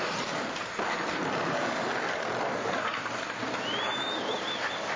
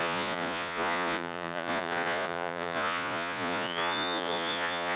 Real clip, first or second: first